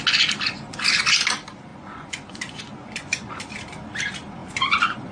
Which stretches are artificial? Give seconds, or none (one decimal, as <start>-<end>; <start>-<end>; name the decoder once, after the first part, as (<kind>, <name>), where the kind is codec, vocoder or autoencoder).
1.7-3.4 (vocoder, Vocos); 4.4-5.1